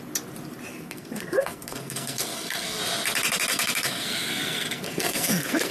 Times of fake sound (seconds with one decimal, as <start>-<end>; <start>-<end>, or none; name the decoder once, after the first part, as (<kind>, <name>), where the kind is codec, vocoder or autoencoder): 0.7-2.8 (codec, SNAC); 3.5-5.7